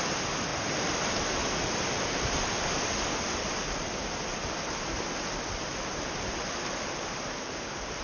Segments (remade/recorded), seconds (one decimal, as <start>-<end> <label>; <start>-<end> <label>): 0.0-8.0 recorded

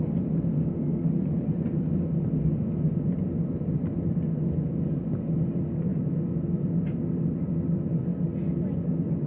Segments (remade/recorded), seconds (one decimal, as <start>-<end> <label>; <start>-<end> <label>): 0.0-0.5 recorded; 0.5-1.1 remade; 1.1-9.3 recorded

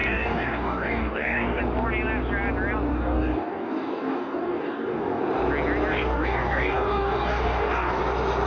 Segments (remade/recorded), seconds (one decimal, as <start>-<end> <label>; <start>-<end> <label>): 0.0-1.6 remade; 1.6-2.9 recorded; 2.9-5.2 remade; 5.2-5.9 recorded; 5.9-8.0 remade; 8.0-8.5 recorded